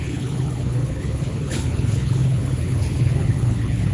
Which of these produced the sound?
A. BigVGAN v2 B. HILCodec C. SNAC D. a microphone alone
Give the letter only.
B